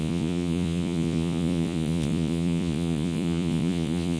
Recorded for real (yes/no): no